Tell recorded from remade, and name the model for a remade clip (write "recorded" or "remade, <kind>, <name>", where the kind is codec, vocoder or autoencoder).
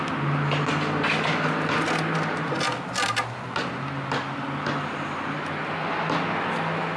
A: recorded